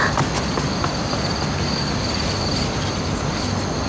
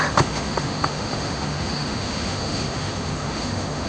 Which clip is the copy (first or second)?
second